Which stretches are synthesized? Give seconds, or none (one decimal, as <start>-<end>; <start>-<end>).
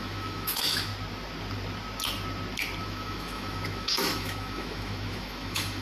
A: 0.0-0.9; 2.8-5.8